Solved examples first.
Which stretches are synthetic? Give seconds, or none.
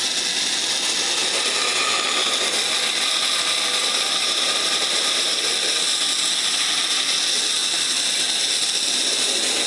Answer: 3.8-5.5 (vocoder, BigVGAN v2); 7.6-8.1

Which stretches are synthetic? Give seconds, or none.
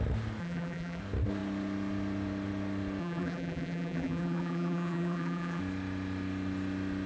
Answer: 0.4-1.0 (vocoder, BigVGAN v2); 3.0-5.6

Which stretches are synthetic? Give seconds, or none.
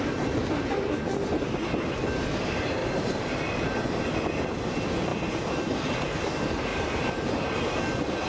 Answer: 2.8-4.0 (vocoder, BigVGAN v2); 6.7-7.8